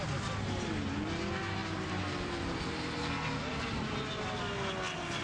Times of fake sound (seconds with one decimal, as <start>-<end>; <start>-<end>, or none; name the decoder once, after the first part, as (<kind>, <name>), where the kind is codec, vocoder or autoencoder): none